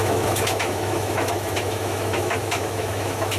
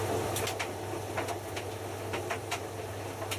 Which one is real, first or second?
second